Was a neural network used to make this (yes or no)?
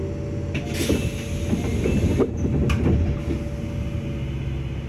no